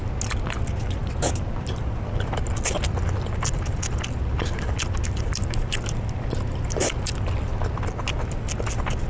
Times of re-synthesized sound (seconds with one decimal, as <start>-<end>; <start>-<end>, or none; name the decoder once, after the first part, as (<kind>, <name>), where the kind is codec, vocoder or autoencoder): none

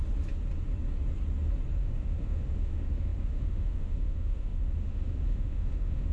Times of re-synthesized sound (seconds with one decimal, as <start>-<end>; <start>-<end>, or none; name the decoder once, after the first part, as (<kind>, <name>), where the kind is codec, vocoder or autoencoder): 1.8-6.1 (autoencoder, DAC-VAE)